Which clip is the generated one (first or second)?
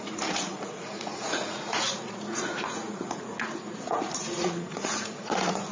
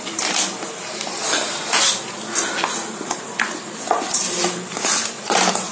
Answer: first